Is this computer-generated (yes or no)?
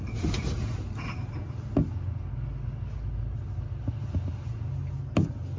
no